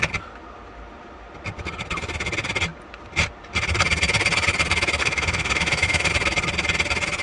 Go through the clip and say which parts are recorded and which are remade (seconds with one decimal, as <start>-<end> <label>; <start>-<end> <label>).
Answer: 0.0-5.0 recorded; 5.0-6.1 remade; 6.1-7.2 recorded